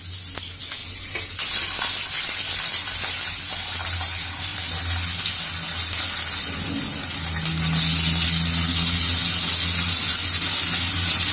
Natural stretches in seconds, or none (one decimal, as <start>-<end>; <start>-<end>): 0.0-11.3

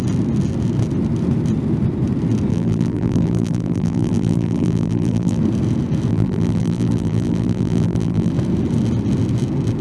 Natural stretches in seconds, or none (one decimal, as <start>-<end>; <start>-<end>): 0.0-2.5; 5.4-6.1; 8.3-9.8

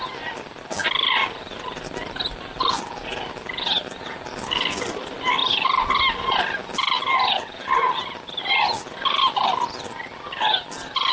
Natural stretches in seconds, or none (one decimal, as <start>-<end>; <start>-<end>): 0.0-11.1

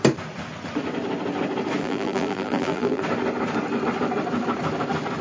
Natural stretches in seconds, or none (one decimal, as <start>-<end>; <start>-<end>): 0.0-1.8; 3.0-5.2

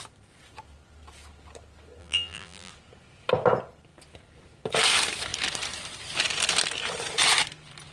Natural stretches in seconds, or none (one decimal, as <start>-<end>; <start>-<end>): 0.0-2.0; 2.7-7.9

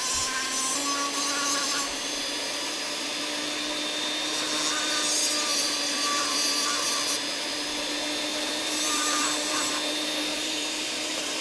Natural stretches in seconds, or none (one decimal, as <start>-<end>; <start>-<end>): 0.0-1.6; 3.1-5.5; 6.9-8.3; 9.7-10.3

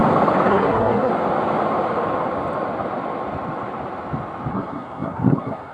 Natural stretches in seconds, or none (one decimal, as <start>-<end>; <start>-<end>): 0.0-0.5; 1.1-4.5